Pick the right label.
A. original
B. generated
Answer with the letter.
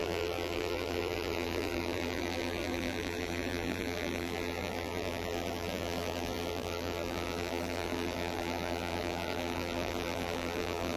B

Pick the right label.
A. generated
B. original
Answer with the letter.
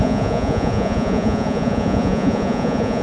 A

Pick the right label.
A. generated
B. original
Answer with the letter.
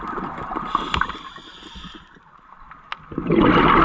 B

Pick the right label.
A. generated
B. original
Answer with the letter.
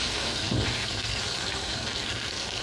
A